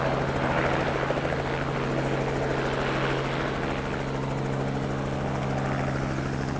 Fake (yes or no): no